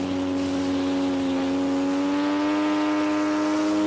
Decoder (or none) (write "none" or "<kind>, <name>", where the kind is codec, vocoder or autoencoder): none